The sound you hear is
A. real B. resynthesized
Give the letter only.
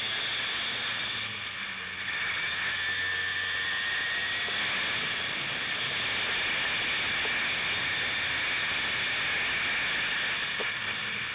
A